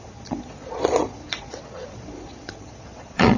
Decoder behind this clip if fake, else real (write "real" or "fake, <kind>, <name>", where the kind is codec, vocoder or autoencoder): fake, vocoder, Vocos